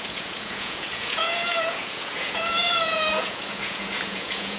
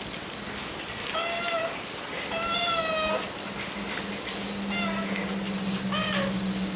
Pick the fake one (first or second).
first